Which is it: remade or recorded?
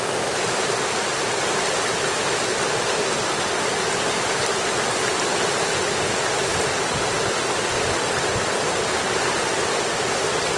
recorded